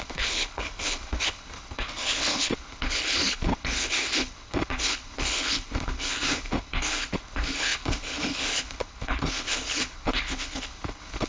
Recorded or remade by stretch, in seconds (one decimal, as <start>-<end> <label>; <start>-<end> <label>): 0.0-11.3 remade